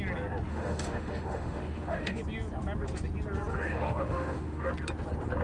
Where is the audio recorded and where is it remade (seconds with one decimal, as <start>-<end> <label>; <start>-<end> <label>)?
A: 0.0-0.5 recorded; 0.5-2.2 remade; 2.2-3.5 recorded; 3.5-4.7 remade; 4.7-5.4 recorded